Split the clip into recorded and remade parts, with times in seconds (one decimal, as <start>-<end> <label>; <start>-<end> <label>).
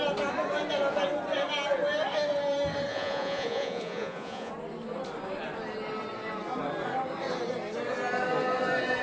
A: 0.0-2.9 recorded; 2.9-4.5 remade; 4.5-9.0 recorded